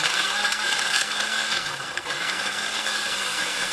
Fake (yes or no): yes